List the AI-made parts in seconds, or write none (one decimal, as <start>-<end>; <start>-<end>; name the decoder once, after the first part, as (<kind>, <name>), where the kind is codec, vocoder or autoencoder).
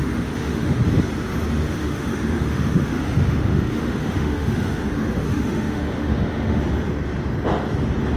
0.0-0.8 (autoencoder, DAC-VAE); 1.7-6.6